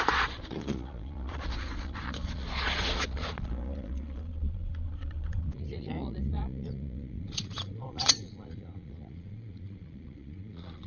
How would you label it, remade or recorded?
remade